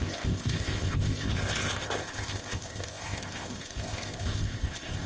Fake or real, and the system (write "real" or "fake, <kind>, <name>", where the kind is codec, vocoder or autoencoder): fake, codec, ZipCodec